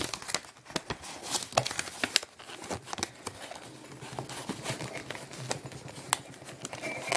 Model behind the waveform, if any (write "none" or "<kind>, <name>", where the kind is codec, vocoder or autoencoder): none